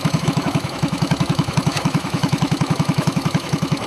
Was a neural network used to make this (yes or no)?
yes